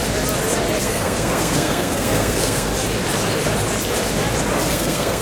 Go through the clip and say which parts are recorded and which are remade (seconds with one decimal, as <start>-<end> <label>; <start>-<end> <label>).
0.0-0.8 recorded; 0.8-2.7 remade; 2.7-4.7 recorded; 4.7-5.2 remade